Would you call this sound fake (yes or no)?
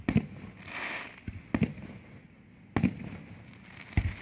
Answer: no